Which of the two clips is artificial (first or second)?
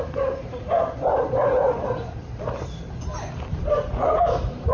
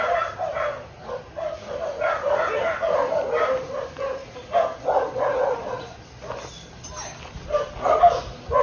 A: first